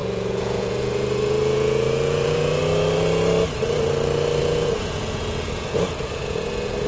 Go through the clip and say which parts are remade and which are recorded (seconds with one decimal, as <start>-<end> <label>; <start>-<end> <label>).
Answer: 0.0-2.6 remade; 2.6-4.4 recorded; 4.4-6.9 remade

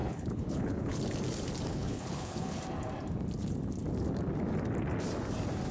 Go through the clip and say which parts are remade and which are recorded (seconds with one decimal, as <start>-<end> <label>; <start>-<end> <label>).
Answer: 0.0-1.0 remade; 1.0-1.7 recorded; 1.7-2.6 remade; 2.6-5.7 recorded